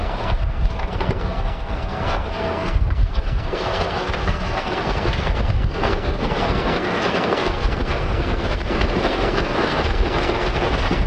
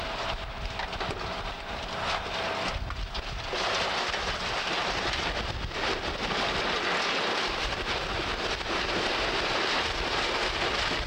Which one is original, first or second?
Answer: second